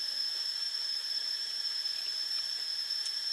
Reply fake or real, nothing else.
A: fake